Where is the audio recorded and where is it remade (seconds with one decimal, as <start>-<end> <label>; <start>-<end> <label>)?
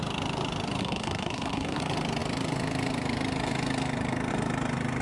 0.0-0.8 recorded; 0.8-1.8 remade; 1.8-5.0 recorded